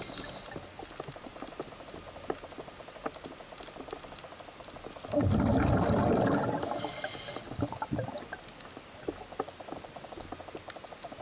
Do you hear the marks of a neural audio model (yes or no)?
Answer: no